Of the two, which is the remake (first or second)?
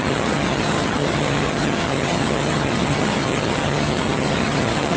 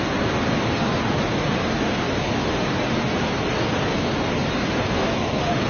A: first